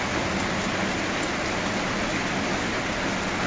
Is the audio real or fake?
real